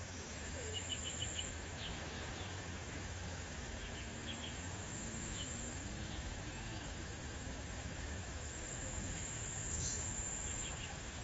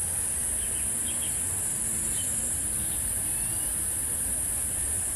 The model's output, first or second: first